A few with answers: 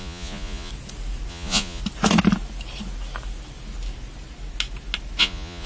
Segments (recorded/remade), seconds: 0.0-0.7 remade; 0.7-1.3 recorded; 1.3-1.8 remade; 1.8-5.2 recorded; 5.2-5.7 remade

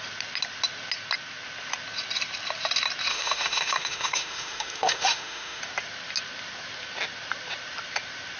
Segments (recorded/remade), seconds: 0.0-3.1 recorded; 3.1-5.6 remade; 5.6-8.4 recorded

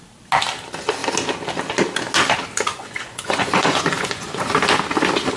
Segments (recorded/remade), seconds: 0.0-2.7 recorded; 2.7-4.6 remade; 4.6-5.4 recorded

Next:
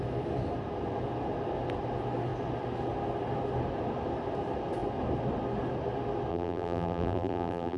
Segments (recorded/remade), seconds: 0.0-6.3 recorded; 6.3-7.8 remade

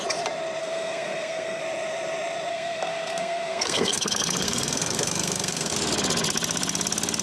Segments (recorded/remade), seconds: 0.0-0.6 recorded; 0.6-1.6 remade; 1.6-2.5 recorded; 2.5-5.7 remade; 5.7-7.2 recorded